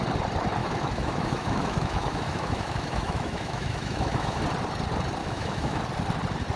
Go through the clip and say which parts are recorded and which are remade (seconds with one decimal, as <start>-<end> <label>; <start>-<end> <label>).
0.0-0.6 recorded; 0.6-4.4 remade; 4.4-5.2 recorded; 5.2-5.8 remade; 5.8-6.6 recorded